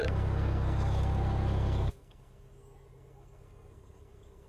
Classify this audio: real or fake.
fake